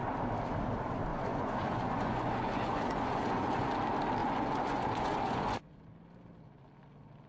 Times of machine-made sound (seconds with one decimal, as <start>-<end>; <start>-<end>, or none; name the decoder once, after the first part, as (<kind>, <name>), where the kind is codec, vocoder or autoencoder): 1.1-3.7 (vocoder, Vocos); 4.2-5.8